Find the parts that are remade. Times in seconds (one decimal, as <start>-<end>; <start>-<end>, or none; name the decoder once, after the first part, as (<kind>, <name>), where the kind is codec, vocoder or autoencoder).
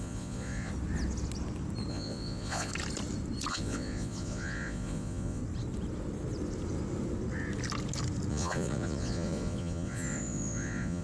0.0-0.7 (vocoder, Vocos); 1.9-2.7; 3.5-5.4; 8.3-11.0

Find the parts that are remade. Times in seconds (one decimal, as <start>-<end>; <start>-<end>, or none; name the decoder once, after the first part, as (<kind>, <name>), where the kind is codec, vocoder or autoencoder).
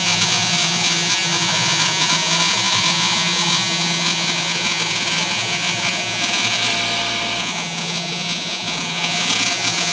0.0-6.7 (vocoder, Vocos); 7.4-9.9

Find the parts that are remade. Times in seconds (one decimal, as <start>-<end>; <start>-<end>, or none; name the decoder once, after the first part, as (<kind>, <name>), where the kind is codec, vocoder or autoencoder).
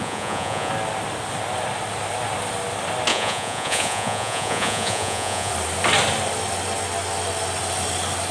0.0-0.7 (vocoder, Vocos); 3.1-5.5